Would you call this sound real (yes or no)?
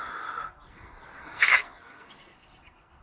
no